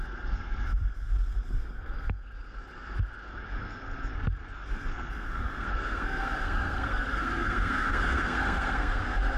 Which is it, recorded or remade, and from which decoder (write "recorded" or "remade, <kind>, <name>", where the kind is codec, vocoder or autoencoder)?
remade, codec, SNAC